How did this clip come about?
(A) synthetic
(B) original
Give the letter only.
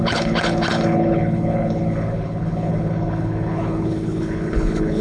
A